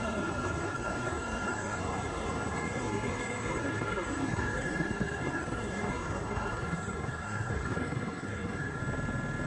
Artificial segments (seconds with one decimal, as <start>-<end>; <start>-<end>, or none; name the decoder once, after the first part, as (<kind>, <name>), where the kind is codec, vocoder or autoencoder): 0.0-8.8 (codec, SNAC)